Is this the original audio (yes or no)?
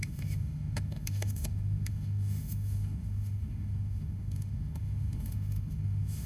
no